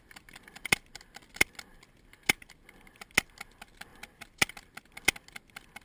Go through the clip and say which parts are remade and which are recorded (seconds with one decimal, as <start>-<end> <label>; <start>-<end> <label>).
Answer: 0.0-5.8 recorded